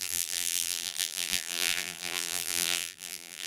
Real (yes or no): no